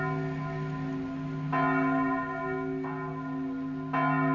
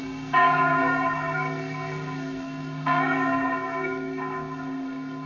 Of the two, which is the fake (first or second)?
second